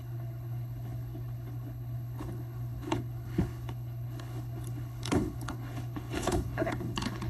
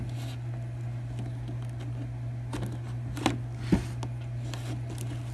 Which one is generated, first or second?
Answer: first